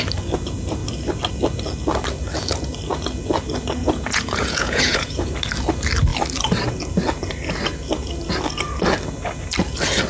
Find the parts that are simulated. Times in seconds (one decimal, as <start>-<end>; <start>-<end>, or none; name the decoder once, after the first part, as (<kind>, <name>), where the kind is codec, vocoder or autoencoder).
3.8-5.3 (vocoder, Vocos)